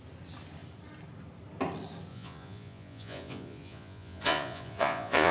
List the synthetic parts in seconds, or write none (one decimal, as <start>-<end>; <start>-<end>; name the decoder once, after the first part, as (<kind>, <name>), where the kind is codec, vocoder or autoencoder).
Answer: 2.1-5.3 (vocoder, Vocos)